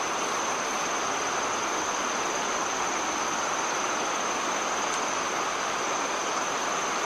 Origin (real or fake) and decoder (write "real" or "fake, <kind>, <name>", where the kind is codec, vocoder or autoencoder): real